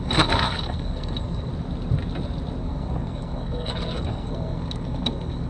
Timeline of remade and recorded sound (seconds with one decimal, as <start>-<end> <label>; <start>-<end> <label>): 0.0-1.5 remade; 1.5-2.6 recorded; 2.6-5.5 remade